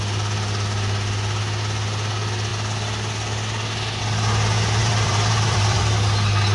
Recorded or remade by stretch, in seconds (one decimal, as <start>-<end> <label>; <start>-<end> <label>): 0.0-4.8 recorded; 4.8-5.8 remade; 5.8-6.5 recorded

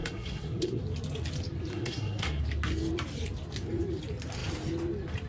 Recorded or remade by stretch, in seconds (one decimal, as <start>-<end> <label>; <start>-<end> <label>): 0.0-0.8 remade; 0.8-1.7 recorded; 1.7-2.4 remade; 2.4-5.3 recorded

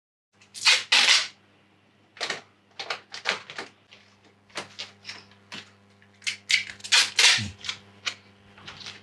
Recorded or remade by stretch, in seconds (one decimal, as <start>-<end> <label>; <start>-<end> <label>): 0.0-9.0 recorded

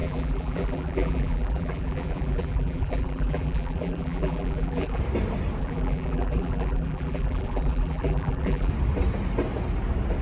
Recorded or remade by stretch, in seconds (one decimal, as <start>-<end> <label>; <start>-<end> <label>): 0.0-5.0 remade; 5.0-5.6 recorded; 5.6-8.7 remade; 8.7-10.2 recorded

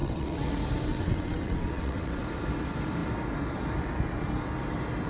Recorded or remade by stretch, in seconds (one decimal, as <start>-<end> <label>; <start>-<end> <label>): 0.0-0.5 remade; 0.5-0.9 recorded; 0.9-2.2 remade; 2.2-5.1 recorded

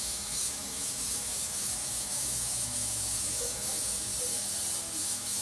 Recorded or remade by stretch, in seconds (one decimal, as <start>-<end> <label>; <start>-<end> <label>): 0.0-4.1 remade; 4.1-5.0 recorded; 5.0-5.4 remade

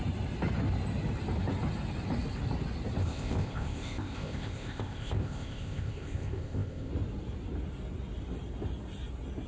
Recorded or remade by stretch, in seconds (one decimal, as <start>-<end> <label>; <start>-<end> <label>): 0.0-3.0 recorded; 3.0-6.9 remade; 6.9-9.5 recorded

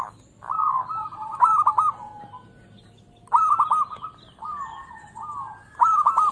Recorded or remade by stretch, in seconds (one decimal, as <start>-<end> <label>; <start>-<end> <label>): 0.0-6.3 recorded